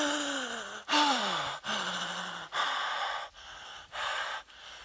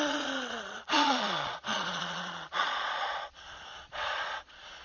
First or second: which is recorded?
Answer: first